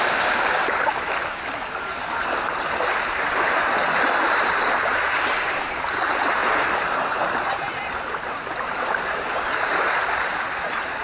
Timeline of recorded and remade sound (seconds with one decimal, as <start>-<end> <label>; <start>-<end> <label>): 0.0-0.9 remade; 0.9-1.8 recorded; 1.8-11.0 remade